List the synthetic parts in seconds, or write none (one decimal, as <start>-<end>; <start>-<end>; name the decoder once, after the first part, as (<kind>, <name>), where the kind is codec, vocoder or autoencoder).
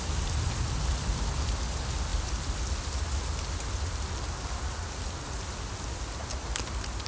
none